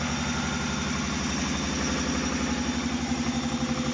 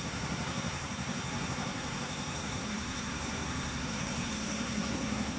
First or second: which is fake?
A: second